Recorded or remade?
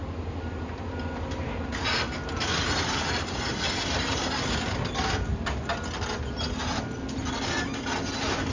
recorded